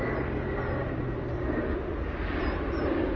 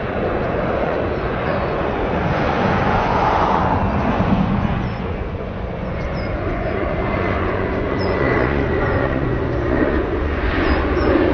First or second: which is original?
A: first